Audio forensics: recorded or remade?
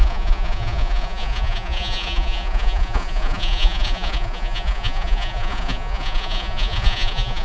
remade